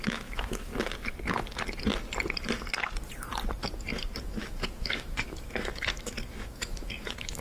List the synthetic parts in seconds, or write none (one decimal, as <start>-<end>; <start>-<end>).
0.0-0.7; 4.2-7.4